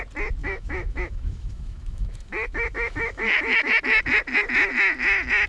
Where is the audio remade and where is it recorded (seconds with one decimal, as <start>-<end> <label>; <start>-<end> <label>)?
0.0-0.4 recorded; 0.4-3.7 remade; 3.7-5.5 recorded